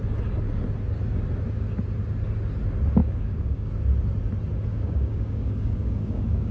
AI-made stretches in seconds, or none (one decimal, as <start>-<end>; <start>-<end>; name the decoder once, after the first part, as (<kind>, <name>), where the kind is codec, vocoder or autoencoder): 3.0-3.7 (codec, DAC); 4.7-6.5